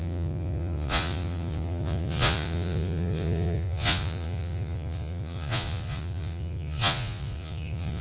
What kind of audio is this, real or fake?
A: fake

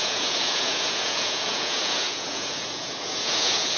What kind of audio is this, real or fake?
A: fake